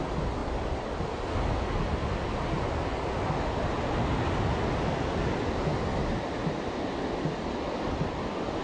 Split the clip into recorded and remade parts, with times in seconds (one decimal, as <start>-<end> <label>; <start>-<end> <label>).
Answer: 0.0-8.6 recorded